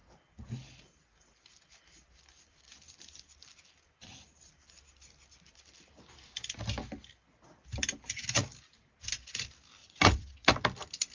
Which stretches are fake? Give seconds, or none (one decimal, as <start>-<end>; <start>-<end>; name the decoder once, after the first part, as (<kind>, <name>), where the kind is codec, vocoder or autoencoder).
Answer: 9.8-10.5 (vocoder, WaveNeXt)